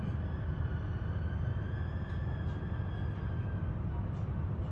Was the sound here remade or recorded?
recorded